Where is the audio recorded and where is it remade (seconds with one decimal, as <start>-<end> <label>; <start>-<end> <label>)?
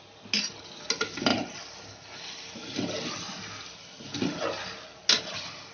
0.0-5.7 recorded